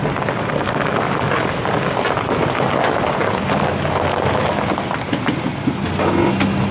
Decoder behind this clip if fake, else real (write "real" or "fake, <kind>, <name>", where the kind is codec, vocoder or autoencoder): real